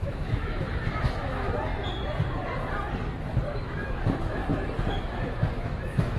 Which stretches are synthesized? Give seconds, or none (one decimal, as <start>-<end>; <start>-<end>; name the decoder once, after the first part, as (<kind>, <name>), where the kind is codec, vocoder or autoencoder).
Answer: 0.0-1.7 (autoencoder, DAC-VAE); 3.5-4.4; 5.0-6.2